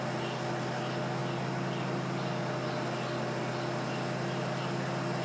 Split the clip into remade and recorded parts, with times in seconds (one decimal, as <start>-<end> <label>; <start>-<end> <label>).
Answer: 0.0-5.2 recorded